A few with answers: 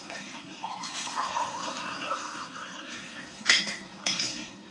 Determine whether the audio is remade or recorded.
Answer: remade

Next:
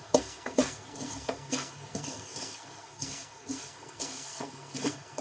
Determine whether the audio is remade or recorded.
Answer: remade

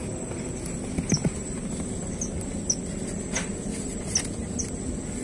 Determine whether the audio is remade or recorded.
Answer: recorded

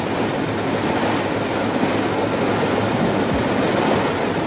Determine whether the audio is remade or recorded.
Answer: recorded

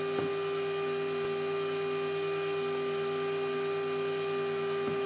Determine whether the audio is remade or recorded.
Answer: recorded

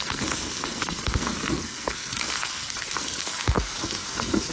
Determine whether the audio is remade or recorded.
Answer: remade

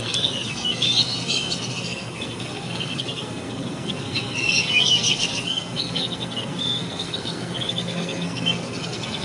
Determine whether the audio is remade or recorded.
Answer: remade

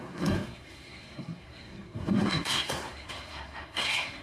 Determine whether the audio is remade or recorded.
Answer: remade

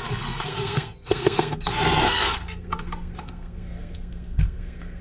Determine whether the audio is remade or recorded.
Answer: remade